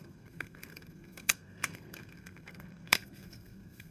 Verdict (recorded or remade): remade